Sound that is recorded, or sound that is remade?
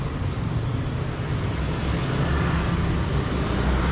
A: recorded